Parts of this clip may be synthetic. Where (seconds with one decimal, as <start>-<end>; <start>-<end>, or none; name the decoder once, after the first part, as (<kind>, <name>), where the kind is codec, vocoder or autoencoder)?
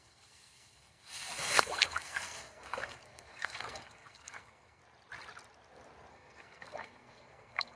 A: 0.0-4.8 (codec, SNAC); 6.1-7.8